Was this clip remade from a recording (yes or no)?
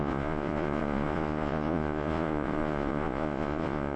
yes